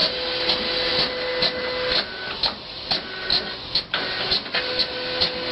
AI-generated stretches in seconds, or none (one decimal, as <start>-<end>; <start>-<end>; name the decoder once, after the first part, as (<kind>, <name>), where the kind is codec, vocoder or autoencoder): none